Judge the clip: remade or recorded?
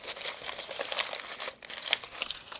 recorded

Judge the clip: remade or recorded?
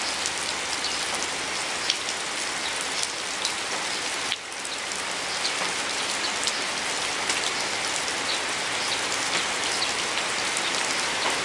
recorded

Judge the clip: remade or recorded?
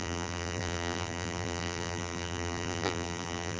remade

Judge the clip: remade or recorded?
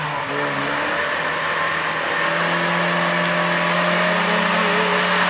recorded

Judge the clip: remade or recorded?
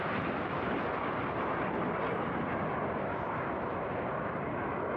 recorded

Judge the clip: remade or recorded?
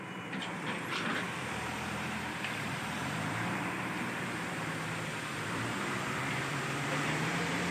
remade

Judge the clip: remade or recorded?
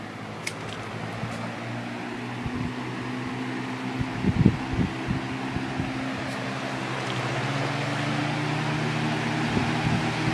recorded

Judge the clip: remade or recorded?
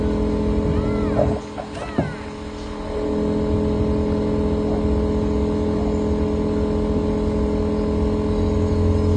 recorded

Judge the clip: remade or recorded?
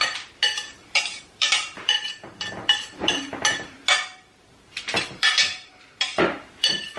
remade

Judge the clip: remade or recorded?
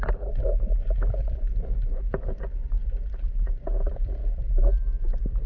remade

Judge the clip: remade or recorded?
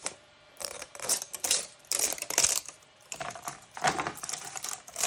remade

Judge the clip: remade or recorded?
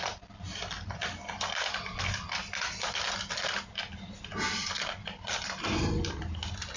recorded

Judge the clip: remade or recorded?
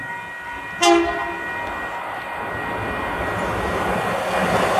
recorded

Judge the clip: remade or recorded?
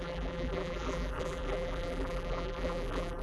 remade